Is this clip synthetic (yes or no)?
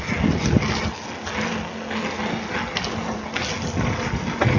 no